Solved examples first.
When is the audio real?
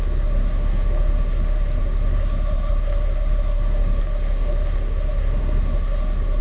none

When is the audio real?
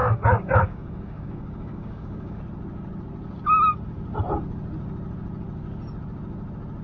2.4-6.8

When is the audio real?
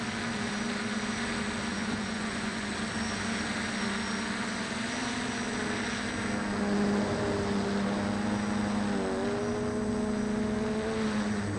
0.0-1.7; 2.7-11.6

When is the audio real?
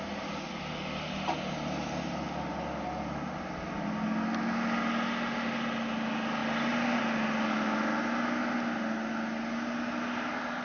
0.0-10.6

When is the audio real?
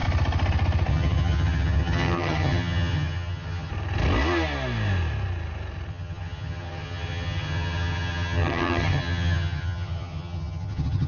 0.0-0.9; 3.7-5.9